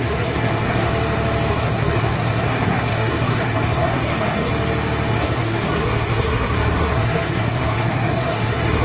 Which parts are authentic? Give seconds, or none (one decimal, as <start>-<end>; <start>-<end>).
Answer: 0.9-1.5; 4.5-5.1